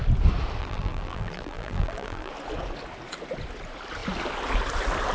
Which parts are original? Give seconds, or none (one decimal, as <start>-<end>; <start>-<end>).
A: 0.0-0.6; 2.3-5.1